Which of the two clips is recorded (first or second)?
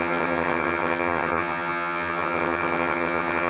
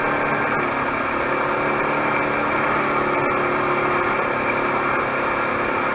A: second